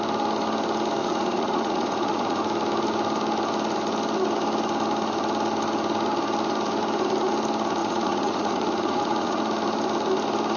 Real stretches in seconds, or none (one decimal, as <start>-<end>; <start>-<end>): 0.0-1.0; 2.4-7.8; 9.4-10.6